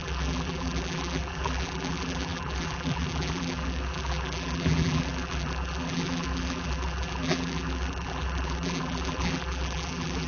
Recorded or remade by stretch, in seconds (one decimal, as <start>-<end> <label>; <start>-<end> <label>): 0.0-10.3 remade

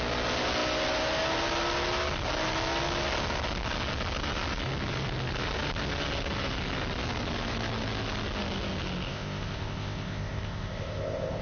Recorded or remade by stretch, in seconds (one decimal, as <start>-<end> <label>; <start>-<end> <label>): 0.0-9.1 recorded; 9.1-11.4 remade

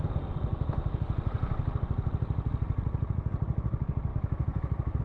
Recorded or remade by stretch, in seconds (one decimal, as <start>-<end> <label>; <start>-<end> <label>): 0.0-0.5 recorded; 0.5-1.0 remade; 1.0-4.1 recorded; 4.1-5.0 remade

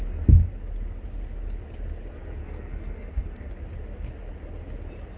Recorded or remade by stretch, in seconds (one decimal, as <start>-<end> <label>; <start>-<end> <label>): 0.0-2.4 recorded; 2.4-3.5 remade; 3.5-5.2 recorded

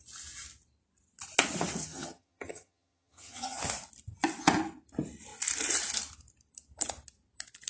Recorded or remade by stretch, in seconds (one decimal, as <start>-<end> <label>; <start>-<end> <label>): 0.0-1.8 recorded; 1.8-3.6 remade; 3.6-7.7 recorded